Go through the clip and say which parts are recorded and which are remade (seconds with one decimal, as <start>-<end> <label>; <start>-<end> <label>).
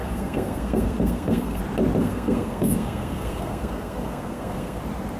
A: 0.0-1.6 remade; 1.6-2.0 recorded; 2.0-4.8 remade; 4.8-5.2 recorded